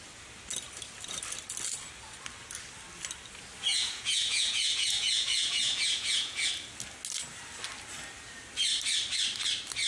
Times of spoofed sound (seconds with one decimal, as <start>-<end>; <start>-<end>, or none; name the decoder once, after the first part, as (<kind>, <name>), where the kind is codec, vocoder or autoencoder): 3.7-6.5 (vocoder, Vocos)